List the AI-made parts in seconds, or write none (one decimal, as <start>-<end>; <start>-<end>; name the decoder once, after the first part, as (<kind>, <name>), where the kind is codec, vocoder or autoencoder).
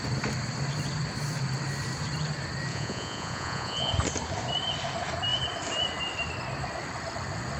2.7-3.9 (vocoder, Vocos)